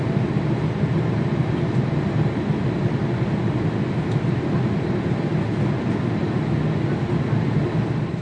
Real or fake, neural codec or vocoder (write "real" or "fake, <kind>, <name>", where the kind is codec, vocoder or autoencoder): real